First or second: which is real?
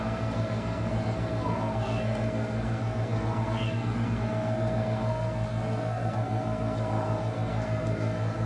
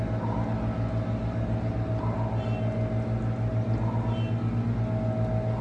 second